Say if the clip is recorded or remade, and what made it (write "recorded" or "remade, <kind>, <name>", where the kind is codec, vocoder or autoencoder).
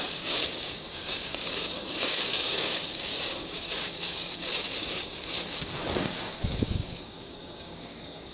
remade, codec, DAC